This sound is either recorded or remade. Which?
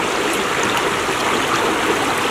recorded